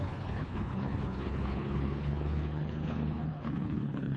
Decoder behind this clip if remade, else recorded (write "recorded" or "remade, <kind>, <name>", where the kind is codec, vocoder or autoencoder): remade, codec, HILCodec